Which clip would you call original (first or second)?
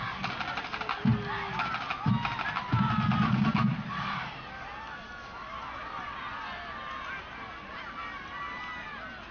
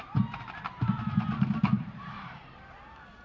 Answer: first